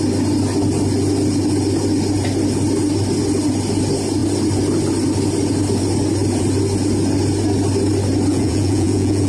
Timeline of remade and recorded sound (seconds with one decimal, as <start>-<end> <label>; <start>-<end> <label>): 0.0-8.3 recorded; 8.3-9.3 remade